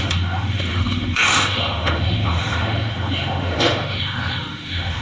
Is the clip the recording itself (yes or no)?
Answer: no